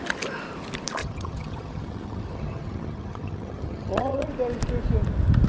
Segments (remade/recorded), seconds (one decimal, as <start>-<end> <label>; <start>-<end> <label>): 0.0-1.0 recorded; 1.0-4.3 remade; 4.3-5.5 recorded